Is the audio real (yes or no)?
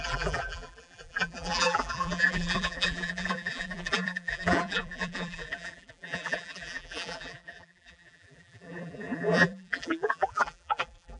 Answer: no